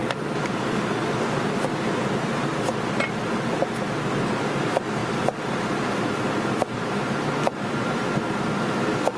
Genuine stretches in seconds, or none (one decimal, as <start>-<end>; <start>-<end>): 0.0-9.2